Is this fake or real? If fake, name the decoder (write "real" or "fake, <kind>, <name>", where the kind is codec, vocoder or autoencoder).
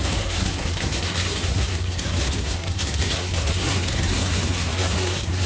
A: fake, codec, SNAC